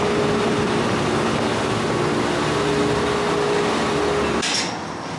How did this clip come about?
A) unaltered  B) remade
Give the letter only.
A